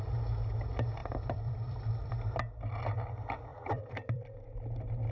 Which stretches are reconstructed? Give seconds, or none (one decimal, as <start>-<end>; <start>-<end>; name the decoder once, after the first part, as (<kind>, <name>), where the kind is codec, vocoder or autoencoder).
1.0-2.1 (vocoder, BigVGAN v2); 3.5-5.1